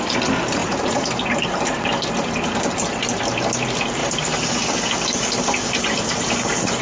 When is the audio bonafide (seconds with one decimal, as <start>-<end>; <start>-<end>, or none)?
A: 0.0-0.6; 1.1-6.8